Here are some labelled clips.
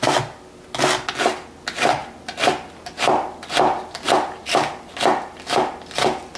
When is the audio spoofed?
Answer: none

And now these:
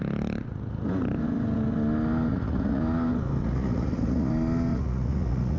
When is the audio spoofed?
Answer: 2.3-2.8 (vocoder, Vocos); 3.4-4.3; 4.7-5.6

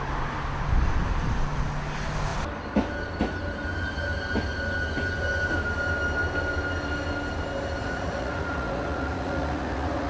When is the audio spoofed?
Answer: 7.8-10.1 (vocoder, Vocos)

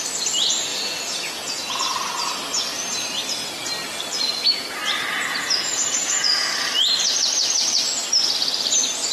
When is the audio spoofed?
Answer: 0.7-1.7 (vocoder, Vocos); 5.3-6.7

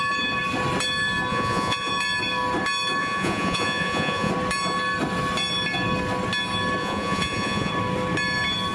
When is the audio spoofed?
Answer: 1.3-1.9 (vocoder, Vocos); 3.0-4.3; 6.8-7.7